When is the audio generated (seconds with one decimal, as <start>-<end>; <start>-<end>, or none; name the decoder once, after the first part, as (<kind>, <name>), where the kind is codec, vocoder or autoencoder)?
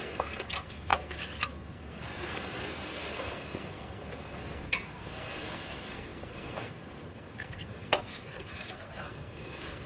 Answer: 0.0-9.9 (codec, SNAC)